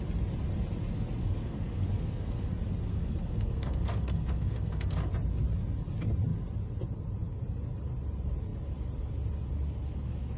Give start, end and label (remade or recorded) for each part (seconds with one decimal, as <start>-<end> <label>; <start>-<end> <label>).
0.0-1.2 recorded; 1.2-2.5 remade; 2.5-2.9 recorded; 2.9-5.1 remade; 5.1-10.4 recorded